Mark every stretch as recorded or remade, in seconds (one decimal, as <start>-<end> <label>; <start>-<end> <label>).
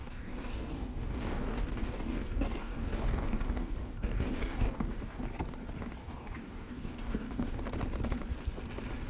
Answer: 0.0-5.2 remade; 5.2-6.0 recorded; 6.0-7.6 remade; 7.6-9.1 recorded